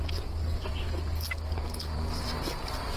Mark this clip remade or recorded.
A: recorded